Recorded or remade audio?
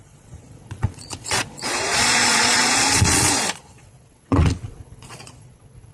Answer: remade